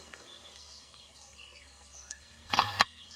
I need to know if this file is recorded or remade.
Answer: remade